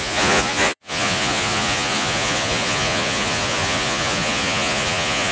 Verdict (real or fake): fake